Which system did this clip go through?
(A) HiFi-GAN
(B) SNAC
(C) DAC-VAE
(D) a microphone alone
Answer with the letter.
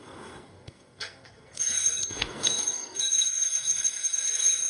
B